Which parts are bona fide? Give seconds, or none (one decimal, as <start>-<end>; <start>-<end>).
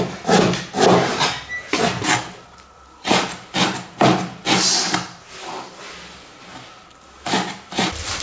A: 0.0-8.2